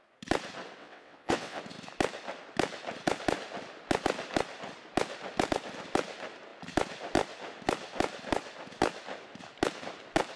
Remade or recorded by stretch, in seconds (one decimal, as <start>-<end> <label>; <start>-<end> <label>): 0.0-0.8 recorded; 0.8-1.6 remade; 1.6-10.4 recorded